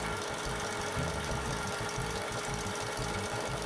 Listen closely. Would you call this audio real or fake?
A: real